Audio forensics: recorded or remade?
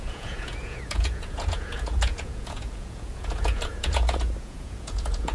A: remade